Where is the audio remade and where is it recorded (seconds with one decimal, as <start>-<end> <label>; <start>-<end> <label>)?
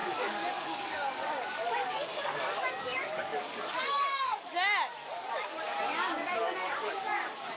0.0-4.5 remade; 4.5-5.0 recorded; 5.0-7.6 remade